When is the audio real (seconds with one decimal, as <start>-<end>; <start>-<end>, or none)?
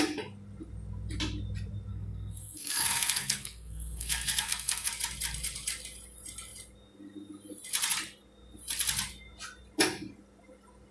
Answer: 0.0-1.9; 4.9-10.9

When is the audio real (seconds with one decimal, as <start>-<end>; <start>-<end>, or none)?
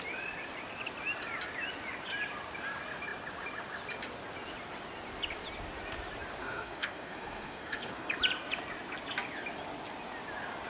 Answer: 0.0-6.4; 8.1-10.7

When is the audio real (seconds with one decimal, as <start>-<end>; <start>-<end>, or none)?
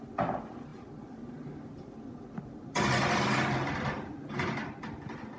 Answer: 0.0-5.4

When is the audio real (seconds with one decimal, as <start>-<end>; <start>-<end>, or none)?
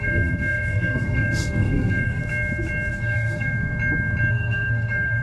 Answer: 2.2-2.9; 3.7-4.3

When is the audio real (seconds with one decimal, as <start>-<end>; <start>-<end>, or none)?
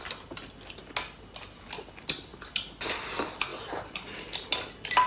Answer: 0.0-5.1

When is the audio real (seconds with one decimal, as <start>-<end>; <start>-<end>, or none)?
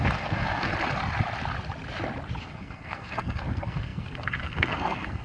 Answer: 0.7-2.4